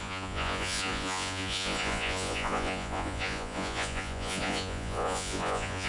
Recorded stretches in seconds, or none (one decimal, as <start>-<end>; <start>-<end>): none